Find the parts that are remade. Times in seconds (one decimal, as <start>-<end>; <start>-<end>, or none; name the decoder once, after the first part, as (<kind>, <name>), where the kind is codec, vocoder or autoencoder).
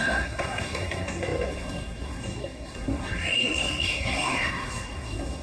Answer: 0.0-5.4 (codec, SNAC)